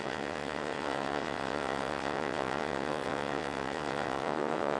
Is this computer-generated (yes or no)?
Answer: yes